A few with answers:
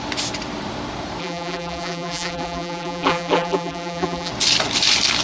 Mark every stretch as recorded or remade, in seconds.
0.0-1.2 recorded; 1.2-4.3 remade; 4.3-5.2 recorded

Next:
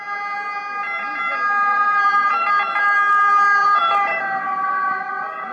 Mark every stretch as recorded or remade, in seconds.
0.0-1.7 recorded; 1.7-2.5 remade; 2.5-3.6 recorded; 3.6-4.2 remade; 4.2-5.5 recorded

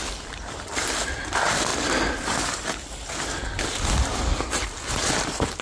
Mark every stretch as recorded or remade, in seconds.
0.0-5.6 recorded

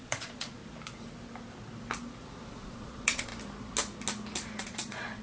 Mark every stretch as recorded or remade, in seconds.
0.0-0.6 remade; 0.6-2.5 recorded; 2.5-3.3 remade; 3.3-4.6 recorded; 4.6-5.2 remade

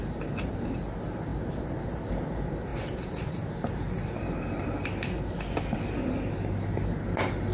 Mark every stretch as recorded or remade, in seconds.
0.0-1.3 recorded; 1.3-2.2 remade; 2.2-2.7 recorded; 2.7-3.3 remade; 3.3-7.5 recorded

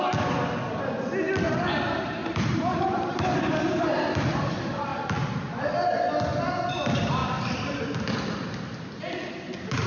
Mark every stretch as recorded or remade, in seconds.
0.0-2.2 recorded; 2.2-4.5 remade; 4.5-7.2 recorded; 7.2-7.8 remade; 7.8-9.9 recorded